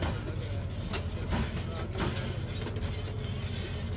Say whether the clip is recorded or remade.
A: recorded